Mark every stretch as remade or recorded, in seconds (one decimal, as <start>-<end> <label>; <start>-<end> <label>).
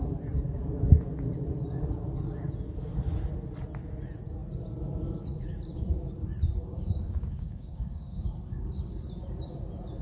0.0-6.6 recorded; 6.6-8.9 remade; 8.9-10.0 recorded